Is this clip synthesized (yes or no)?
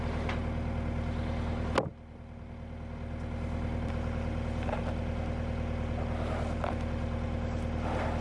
no